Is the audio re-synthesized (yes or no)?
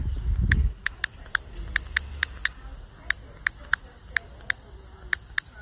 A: no